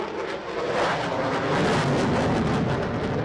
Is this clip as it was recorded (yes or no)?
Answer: yes